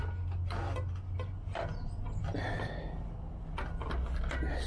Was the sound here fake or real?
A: real